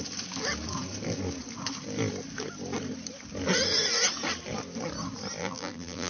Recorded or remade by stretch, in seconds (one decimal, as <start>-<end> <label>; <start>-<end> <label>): 0.0-5.4 recorded; 5.4-6.1 remade